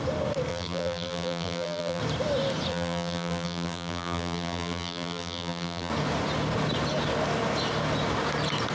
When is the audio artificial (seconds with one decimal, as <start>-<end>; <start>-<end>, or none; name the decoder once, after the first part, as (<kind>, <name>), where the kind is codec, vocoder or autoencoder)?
0.5-2.0 (vocoder, BigVGAN v2); 2.7-5.9